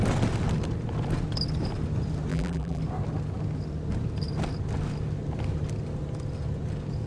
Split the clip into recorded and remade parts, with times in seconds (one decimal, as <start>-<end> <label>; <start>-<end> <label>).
0.0-2.3 recorded; 2.3-2.8 remade; 2.8-7.1 recorded

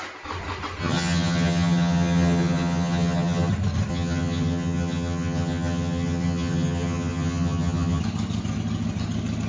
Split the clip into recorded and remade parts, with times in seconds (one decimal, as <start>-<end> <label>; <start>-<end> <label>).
0.0-0.8 recorded; 0.8-3.5 remade; 3.5-3.9 recorded; 3.9-8.0 remade; 8.0-9.5 recorded

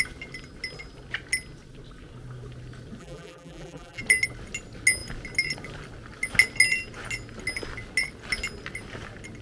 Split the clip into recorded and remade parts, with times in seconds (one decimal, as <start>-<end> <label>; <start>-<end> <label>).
0.0-3.0 recorded; 3.0-4.0 remade; 4.0-9.4 recorded

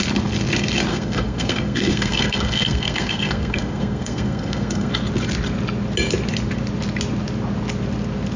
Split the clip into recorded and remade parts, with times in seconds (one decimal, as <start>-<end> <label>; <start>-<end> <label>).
0.0-0.9 recorded; 0.9-4.9 remade; 4.9-8.4 recorded

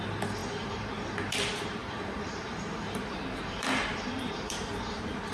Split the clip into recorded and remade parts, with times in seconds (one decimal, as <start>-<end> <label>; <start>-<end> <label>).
0.0-4.7 remade; 4.7-5.3 recorded

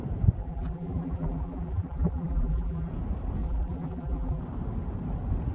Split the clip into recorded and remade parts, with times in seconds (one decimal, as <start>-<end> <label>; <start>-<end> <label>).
0.0-0.4 recorded; 0.4-2.9 remade; 2.9-3.4 recorded; 3.4-4.4 remade; 4.4-5.5 recorded